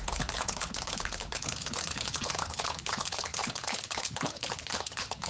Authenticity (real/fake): fake